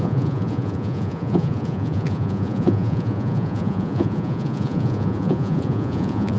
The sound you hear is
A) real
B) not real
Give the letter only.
B